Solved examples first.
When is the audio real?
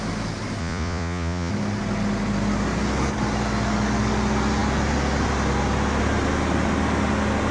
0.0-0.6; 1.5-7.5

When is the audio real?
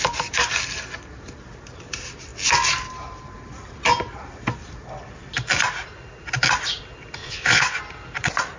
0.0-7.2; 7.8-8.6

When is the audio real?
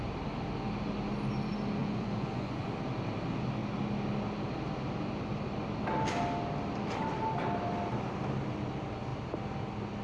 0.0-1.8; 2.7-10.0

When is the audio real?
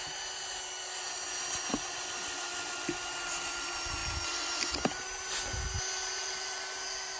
0.0-7.2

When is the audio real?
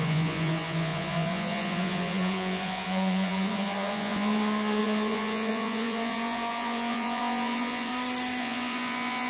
7.9-8.4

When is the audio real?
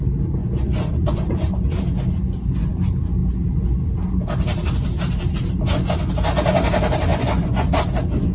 0.0-0.4; 1.8-7.1; 7.7-8.3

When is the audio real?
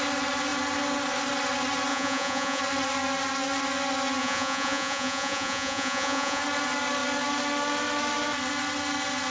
0.0-1.9; 2.6-4.2; 6.4-9.3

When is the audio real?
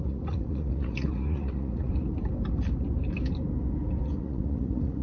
1.9-4.1